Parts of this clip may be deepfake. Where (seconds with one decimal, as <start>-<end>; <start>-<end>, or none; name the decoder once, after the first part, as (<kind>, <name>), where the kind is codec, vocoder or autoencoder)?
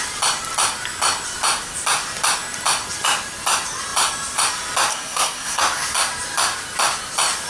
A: 4.9-5.6 (codec, SNAC)